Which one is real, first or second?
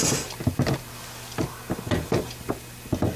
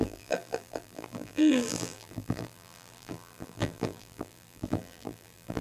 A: first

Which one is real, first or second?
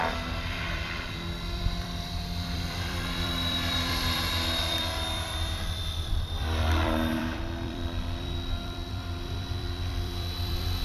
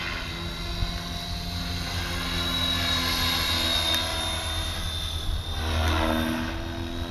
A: second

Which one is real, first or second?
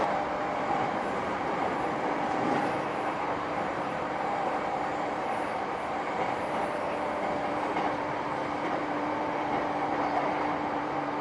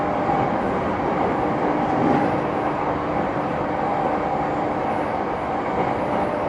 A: second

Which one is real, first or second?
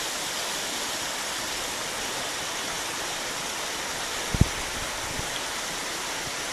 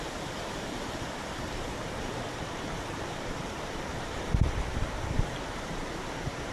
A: first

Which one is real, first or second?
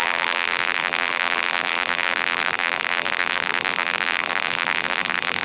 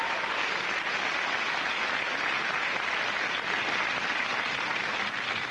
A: second